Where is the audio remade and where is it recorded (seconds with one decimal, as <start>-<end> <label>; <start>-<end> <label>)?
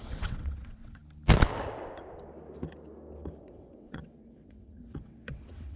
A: 0.0-1.0 remade; 1.0-3.4 recorded; 3.4-5.8 remade